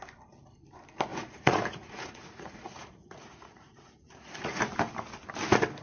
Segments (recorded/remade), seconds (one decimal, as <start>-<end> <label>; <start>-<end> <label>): 0.0-1.1 recorded; 1.1-4.6 remade; 4.6-5.8 recorded